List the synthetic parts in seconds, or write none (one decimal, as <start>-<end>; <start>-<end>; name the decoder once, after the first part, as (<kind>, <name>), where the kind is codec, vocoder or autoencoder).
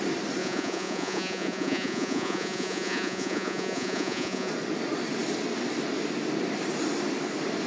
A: 0.4-4.5 (vocoder, Vocos)